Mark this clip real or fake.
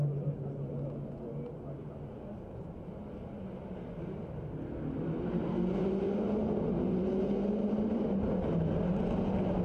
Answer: real